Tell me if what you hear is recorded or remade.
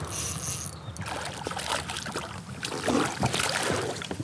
recorded